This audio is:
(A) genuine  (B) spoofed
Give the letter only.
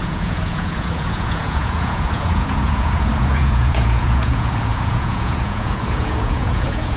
B